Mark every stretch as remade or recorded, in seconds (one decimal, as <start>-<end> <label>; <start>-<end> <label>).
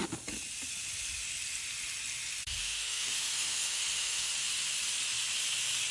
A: 0.0-2.6 recorded; 2.6-4.3 remade; 4.3-5.9 recorded